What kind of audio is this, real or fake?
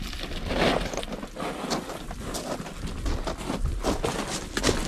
real